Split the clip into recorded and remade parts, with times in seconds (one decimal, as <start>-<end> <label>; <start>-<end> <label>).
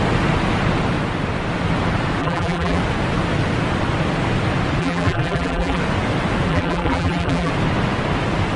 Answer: 0.0-2.2 recorded; 2.2-2.8 remade; 2.8-4.8 recorded; 4.8-5.8 remade; 5.8-6.5 recorded; 6.5-7.5 remade; 7.5-8.6 recorded